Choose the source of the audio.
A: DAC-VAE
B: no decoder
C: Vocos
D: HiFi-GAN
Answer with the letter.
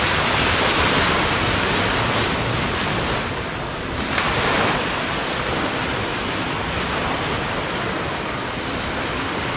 B